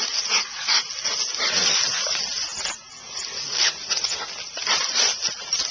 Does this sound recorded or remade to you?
recorded